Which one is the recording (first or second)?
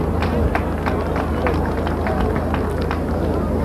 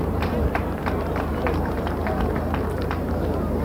first